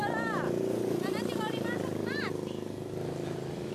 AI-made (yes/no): no